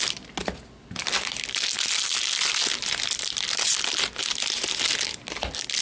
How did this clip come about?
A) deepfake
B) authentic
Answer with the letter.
B